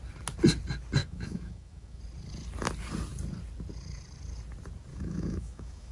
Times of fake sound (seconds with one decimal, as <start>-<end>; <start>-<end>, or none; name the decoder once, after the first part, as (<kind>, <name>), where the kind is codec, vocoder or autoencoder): 1.0-2.0 (autoencoder, DAC-VAE); 4.9-5.9